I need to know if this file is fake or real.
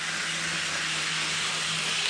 real